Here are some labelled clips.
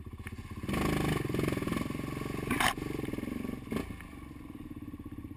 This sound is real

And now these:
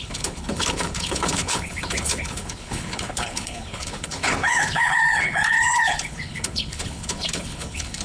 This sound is fake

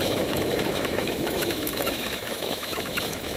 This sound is fake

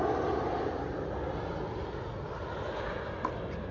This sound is real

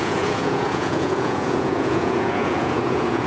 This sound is fake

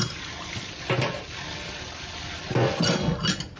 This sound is real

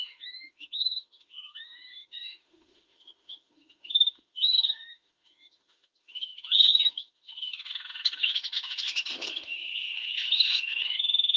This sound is fake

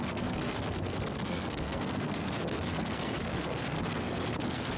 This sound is fake